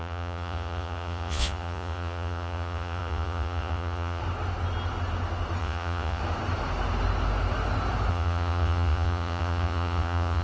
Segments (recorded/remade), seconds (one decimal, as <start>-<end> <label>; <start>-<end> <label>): 0.0-4.2 remade; 4.2-5.6 recorded; 5.6-6.2 remade; 6.2-8.1 recorded; 8.1-10.4 remade